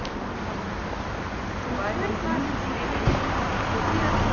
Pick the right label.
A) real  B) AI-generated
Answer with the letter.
A